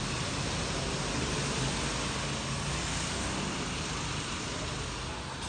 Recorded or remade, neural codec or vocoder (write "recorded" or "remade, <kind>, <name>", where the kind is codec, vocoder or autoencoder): recorded